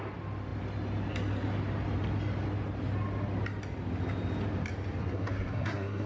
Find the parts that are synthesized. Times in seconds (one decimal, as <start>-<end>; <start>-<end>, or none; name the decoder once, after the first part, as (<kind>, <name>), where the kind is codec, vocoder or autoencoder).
5.0-6.1 (codec, SNAC)